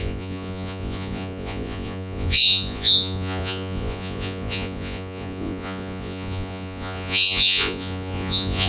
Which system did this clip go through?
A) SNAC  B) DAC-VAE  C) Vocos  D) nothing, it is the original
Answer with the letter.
C